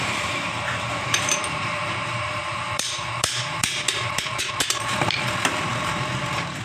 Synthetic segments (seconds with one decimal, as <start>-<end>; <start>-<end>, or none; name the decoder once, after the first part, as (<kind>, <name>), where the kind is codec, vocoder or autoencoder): 0.0-6.6 (vocoder, BigVGAN v2)